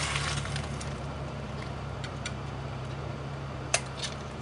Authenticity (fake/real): fake